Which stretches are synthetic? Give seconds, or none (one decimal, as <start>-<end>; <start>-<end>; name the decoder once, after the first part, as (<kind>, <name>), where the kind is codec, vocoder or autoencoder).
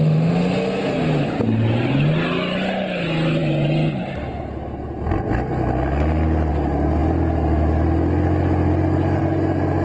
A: none